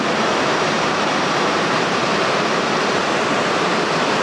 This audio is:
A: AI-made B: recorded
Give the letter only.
A